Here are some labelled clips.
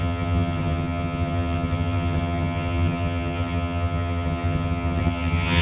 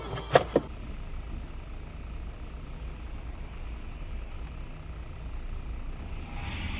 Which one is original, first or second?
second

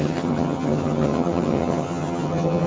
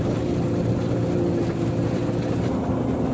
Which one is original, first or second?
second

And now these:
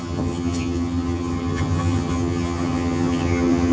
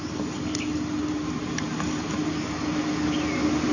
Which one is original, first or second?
second